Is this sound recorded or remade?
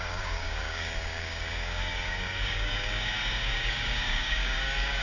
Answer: remade